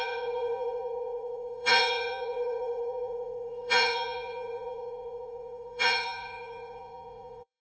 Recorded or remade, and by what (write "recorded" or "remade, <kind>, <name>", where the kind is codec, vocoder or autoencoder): remade, vocoder, Vocos